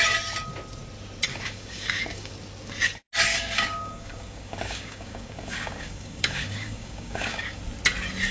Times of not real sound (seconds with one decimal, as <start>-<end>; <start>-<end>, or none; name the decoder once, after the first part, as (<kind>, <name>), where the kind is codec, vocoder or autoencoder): 1.3-2.3 (codec, DAC); 3.3-7.6